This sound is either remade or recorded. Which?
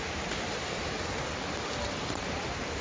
recorded